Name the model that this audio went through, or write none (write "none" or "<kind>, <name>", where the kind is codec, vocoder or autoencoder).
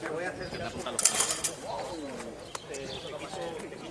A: none